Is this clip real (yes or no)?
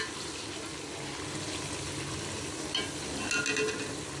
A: yes